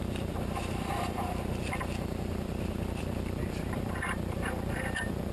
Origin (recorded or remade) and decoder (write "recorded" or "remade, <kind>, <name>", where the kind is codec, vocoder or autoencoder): remade, vocoder, BigVGAN v2